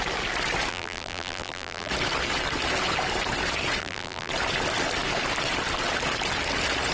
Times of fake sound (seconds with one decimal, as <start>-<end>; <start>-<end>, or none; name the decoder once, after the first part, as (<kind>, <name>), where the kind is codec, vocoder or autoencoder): 0.7-1.9 (vocoder, BigVGAN v2); 3.8-4.3